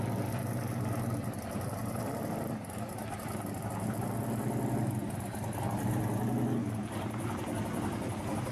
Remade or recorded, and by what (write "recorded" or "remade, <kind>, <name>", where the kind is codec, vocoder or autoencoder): recorded